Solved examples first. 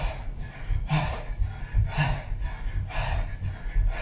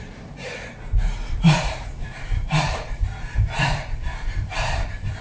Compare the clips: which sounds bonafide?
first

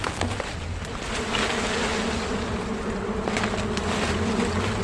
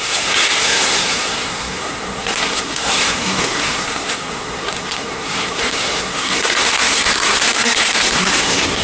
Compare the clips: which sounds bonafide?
first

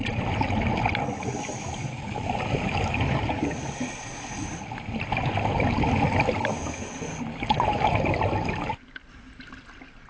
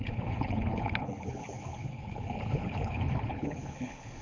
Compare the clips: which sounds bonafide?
first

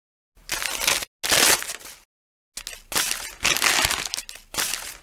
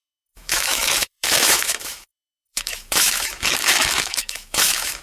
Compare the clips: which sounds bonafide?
first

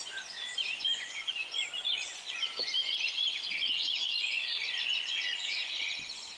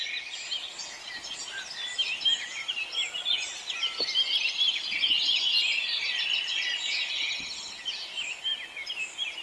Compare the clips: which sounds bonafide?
second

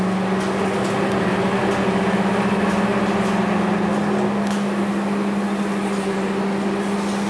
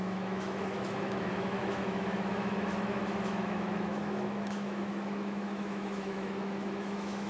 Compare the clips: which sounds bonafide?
first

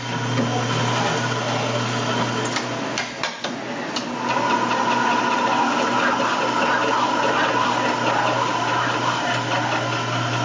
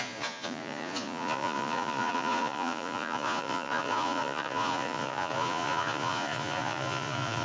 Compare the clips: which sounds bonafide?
first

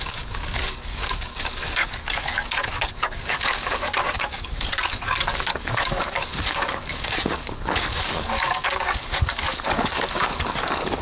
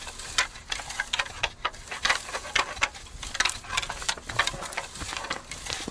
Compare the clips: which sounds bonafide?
second